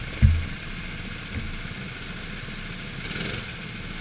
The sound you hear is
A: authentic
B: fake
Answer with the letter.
A